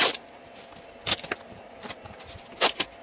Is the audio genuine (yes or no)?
yes